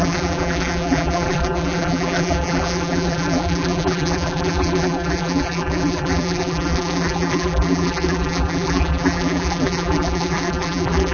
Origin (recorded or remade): remade